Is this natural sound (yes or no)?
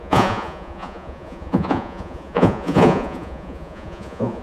no